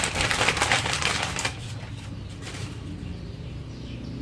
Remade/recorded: recorded